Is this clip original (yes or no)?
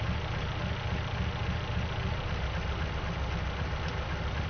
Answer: yes